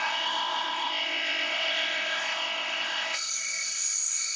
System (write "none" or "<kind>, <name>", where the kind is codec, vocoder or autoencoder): codec, ZipCodec